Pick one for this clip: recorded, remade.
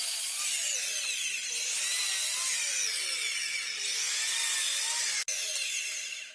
recorded